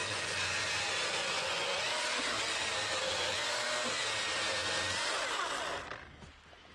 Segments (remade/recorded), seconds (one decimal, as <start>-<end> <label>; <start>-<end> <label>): 0.0-0.7 remade; 0.7-1.2 recorded; 1.2-1.9 remade; 1.9-6.7 recorded